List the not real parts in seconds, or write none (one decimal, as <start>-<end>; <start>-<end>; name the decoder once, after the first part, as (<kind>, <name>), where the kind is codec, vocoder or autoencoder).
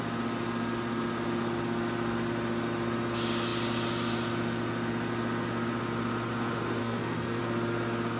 6.8-7.4 (codec, SNAC)